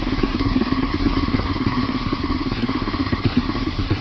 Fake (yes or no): yes